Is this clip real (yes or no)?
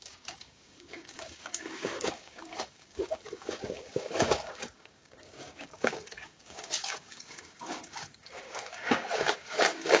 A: no